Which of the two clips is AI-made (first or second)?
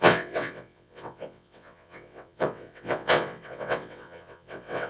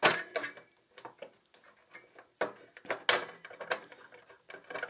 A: first